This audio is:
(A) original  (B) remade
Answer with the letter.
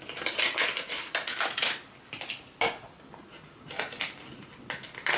A